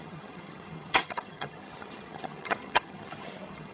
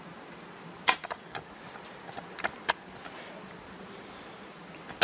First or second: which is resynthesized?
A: first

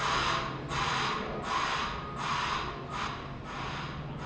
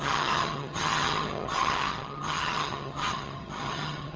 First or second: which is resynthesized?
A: second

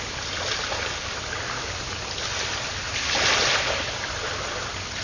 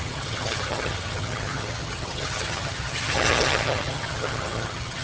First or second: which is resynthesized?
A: second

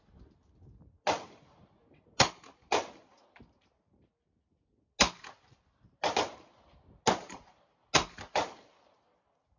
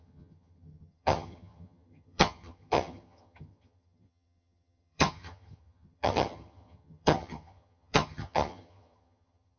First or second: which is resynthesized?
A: second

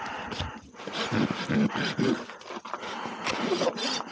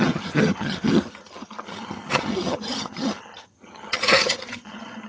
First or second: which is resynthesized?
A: second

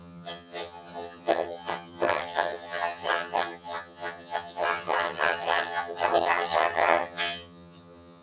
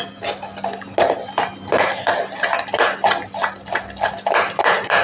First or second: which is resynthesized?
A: first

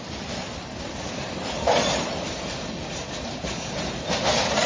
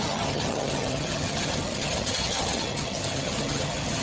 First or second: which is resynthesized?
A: second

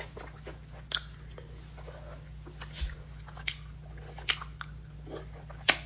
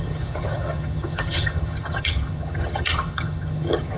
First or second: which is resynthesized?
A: second